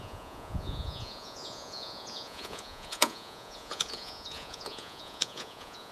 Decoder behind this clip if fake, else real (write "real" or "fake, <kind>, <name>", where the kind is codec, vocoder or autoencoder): fake, vocoder, Vocos